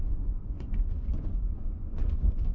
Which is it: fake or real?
fake